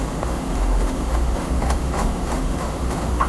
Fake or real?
fake